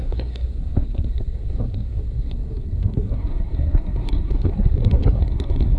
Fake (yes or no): yes